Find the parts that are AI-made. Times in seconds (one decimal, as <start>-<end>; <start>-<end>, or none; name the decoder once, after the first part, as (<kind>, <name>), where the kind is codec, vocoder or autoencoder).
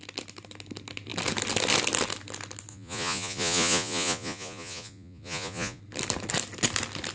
2.7-5.8 (vocoder, Vocos)